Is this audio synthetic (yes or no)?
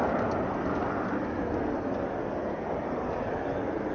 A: no